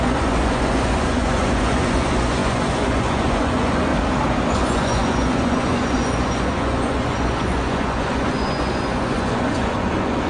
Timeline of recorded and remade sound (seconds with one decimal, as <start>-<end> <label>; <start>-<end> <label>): 0.0-3.9 remade; 3.9-4.5 recorded; 4.5-10.3 remade